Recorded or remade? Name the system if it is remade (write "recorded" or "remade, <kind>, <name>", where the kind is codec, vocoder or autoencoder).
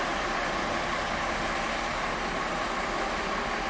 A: recorded